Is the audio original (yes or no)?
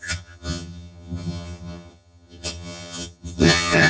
no